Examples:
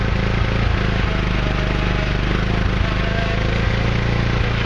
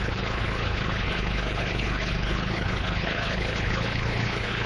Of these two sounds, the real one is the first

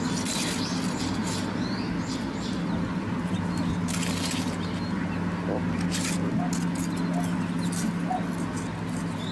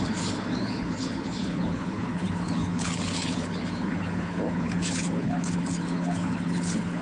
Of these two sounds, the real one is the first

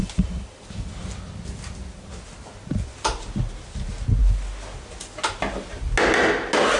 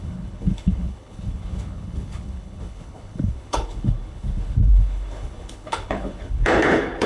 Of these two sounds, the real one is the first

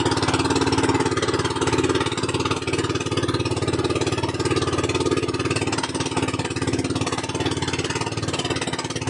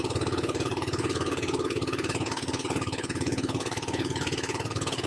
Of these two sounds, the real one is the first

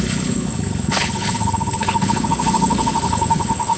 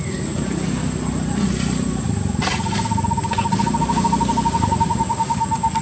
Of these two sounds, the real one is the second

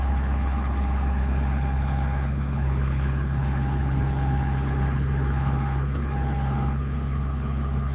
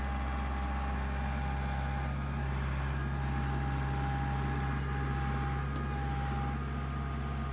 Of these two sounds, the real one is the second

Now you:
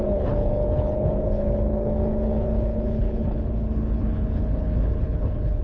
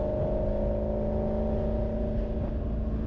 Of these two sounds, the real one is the second